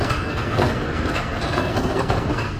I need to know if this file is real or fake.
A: fake